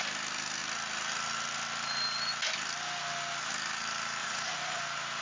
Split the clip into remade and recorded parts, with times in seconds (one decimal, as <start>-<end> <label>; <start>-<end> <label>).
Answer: 0.0-4.2 recorded; 4.2-4.8 remade; 4.8-5.2 recorded